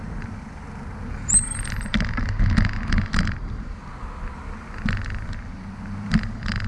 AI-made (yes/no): no